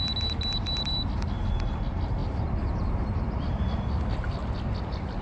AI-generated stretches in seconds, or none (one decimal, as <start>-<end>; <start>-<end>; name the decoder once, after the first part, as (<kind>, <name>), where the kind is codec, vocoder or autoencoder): 2.2-4.1 (vocoder, BigVGAN v2)